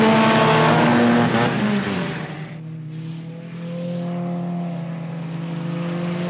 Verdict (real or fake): real